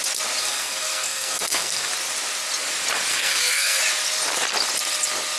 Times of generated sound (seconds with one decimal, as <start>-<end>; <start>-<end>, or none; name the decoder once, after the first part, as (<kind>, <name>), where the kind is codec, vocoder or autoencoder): 0.4-1.9 (codec, SNAC); 3.1-3.8